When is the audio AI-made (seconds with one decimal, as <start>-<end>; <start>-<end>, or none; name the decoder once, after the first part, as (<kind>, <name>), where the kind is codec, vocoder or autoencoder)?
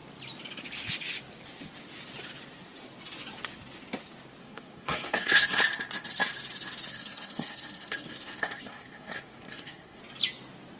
4.4-5.6 (codec, SNAC); 6.9-10.0